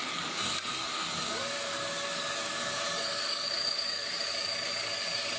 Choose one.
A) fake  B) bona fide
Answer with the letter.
A